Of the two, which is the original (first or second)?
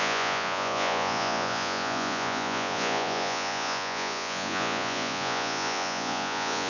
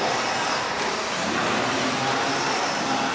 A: second